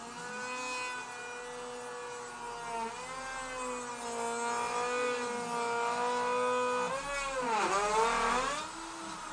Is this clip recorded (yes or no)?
yes